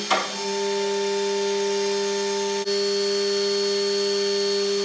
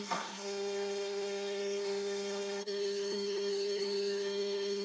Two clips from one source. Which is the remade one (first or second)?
second